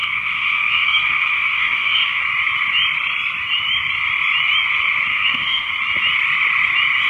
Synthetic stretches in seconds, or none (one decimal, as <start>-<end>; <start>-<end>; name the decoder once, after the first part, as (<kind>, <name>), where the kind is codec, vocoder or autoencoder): 0.0-2.2 (autoencoder, DAC-VAE); 5.1-5.7